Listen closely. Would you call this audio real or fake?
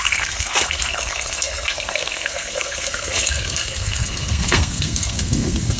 fake